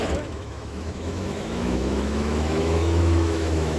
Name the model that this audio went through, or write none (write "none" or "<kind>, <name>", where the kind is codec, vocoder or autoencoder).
autoencoder, DAC-VAE